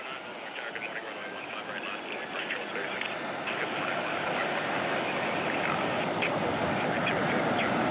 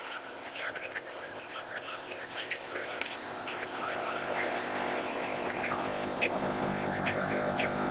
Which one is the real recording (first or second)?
first